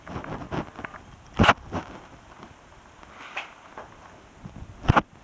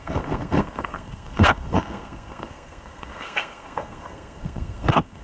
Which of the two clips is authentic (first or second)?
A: first